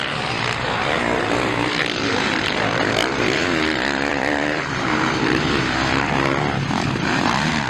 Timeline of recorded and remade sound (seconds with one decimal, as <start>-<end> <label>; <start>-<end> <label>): 0.0-4.1 recorded; 4.1-7.7 remade